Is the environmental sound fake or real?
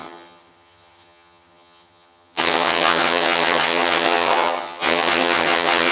fake